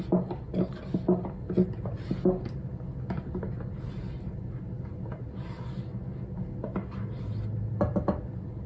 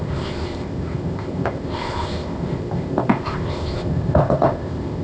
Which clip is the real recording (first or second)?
first